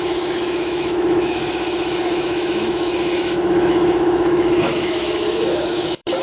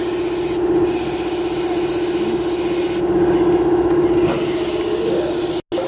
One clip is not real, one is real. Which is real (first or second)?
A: second